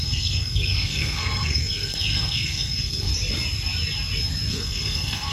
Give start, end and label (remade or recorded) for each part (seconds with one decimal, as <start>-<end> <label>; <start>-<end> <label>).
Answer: 0.0-3.1 remade; 3.1-4.5 recorded; 4.5-5.3 remade

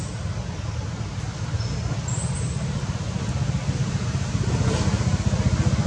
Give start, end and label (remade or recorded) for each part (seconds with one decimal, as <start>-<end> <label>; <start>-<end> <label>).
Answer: 0.0-5.9 recorded

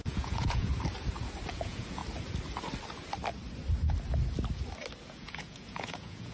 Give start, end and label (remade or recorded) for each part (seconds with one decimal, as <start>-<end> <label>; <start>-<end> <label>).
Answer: 0.0-0.7 remade; 0.7-1.5 recorded; 1.5-2.0 remade; 2.0-5.0 recorded; 5.0-6.3 remade

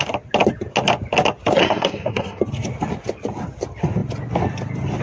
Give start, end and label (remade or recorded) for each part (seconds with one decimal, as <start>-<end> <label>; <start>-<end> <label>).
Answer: 0.0-1.6 recorded; 1.6-2.4 remade; 2.4-5.0 recorded

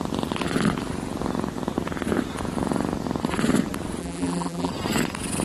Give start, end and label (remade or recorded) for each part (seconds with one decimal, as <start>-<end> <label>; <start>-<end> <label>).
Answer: 0.0-4.0 recorded; 4.0-4.7 remade; 4.7-5.4 recorded

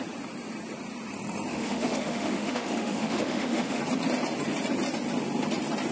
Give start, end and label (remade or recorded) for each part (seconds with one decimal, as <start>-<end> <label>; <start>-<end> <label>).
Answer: 0.0-1.5 recorded; 1.5-3.8 remade; 3.8-5.9 recorded

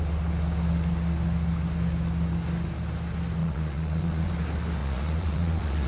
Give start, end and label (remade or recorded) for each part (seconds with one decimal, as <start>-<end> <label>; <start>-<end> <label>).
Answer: 0.0-3.4 recorded; 3.4-4.3 remade; 4.3-4.8 recorded; 4.8-5.9 remade

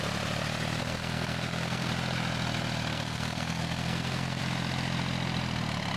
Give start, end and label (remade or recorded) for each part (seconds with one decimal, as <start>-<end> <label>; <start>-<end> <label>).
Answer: 0.0-0.8 recorded; 0.8-1.9 remade; 1.9-2.9 recorded; 2.9-4.4 remade; 4.4-6.0 recorded